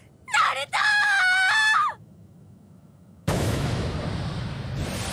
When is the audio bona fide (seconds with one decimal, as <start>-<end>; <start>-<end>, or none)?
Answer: 0.0-0.9; 4.0-5.1